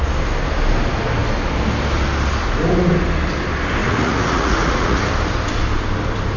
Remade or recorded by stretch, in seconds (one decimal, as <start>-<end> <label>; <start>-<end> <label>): 0.0-3.8 recorded; 3.8-5.0 remade; 5.0-6.4 recorded